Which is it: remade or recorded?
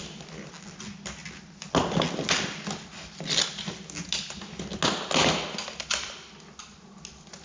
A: recorded